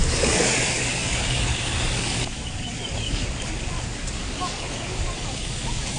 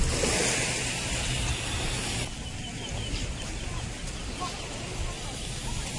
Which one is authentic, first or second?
second